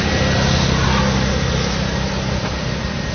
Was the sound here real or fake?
real